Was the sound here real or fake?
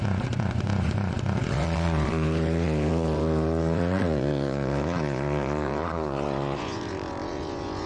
fake